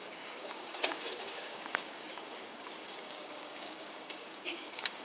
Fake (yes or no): yes